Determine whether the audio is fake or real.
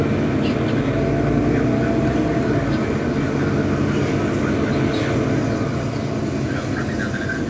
real